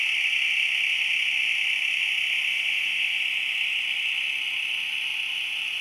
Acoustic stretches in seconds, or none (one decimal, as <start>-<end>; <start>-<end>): 0.0-2.5; 3.2-5.8